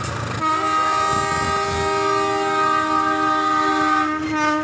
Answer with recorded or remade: recorded